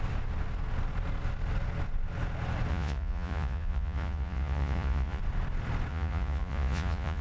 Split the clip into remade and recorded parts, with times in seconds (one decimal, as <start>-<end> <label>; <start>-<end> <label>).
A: 0.0-2.7 recorded; 2.7-5.2 remade; 5.2-5.9 recorded; 5.9-7.2 remade